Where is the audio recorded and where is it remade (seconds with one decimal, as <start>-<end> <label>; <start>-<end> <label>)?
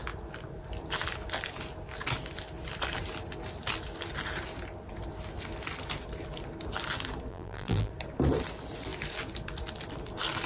0.0-7.3 recorded; 7.3-7.9 remade; 7.9-10.5 recorded